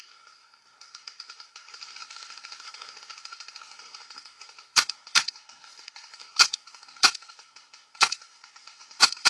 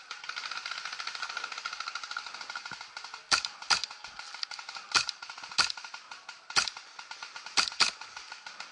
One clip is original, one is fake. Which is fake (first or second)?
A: first